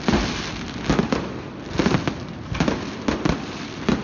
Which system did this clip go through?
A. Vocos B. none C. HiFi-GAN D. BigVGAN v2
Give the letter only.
B